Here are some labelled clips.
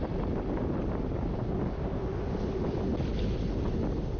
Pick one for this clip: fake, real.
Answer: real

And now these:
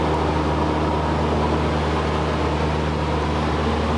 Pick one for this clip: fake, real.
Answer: real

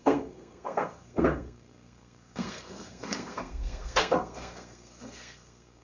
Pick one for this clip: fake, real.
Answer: fake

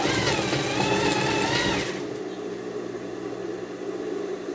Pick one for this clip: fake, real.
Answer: real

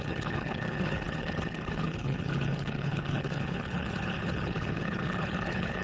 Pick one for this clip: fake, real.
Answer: fake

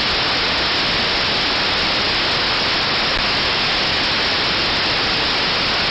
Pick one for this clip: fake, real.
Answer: real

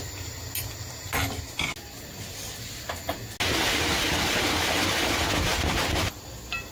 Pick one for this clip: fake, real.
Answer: real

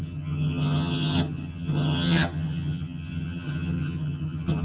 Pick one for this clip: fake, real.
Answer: fake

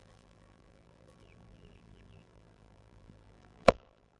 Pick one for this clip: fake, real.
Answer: fake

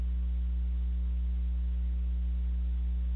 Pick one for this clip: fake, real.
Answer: real